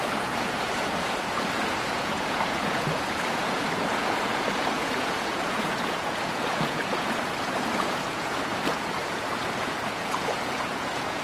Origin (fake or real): fake